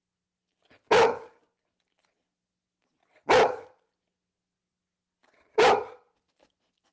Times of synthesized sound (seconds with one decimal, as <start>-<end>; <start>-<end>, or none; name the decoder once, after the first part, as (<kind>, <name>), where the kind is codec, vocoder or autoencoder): none